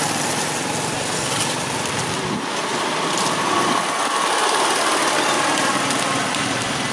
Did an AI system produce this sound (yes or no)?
no